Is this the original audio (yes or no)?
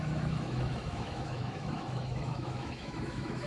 no